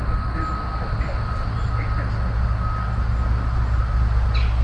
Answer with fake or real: real